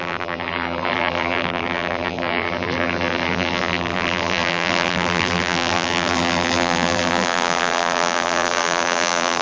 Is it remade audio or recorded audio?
remade